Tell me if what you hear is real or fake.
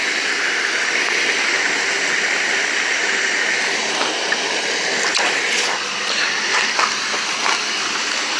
fake